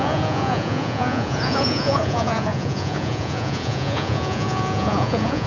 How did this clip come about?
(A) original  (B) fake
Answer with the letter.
B